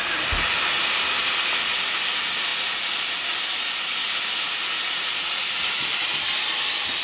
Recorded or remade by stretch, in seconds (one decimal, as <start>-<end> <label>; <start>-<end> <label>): 0.0-7.0 recorded